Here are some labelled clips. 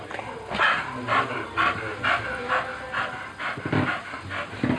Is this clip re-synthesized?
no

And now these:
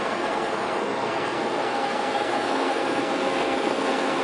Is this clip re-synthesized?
yes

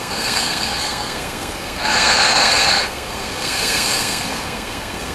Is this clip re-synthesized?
yes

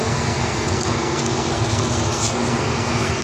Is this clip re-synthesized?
yes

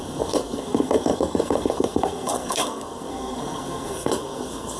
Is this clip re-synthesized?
yes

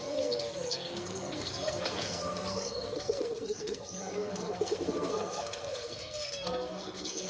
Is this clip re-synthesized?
yes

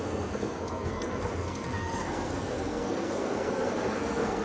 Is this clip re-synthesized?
yes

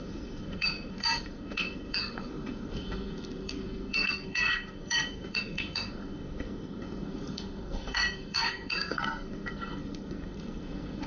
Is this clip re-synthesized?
yes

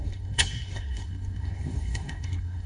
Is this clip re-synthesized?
yes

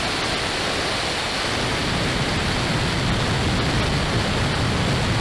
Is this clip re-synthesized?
no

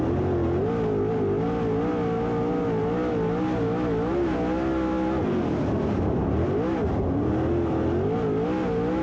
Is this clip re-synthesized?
no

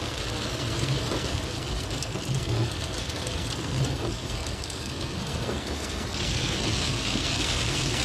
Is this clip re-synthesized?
yes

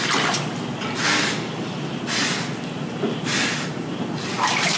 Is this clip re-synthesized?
no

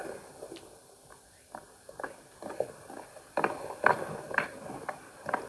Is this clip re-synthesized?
no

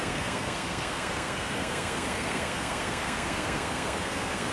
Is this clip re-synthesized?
yes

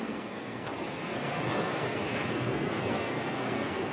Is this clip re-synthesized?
yes